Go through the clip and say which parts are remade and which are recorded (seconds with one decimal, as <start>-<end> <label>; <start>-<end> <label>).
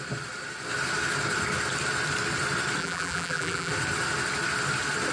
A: 0.0-2.8 recorded; 2.8-3.7 remade; 3.7-5.1 recorded